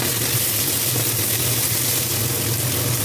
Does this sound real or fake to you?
real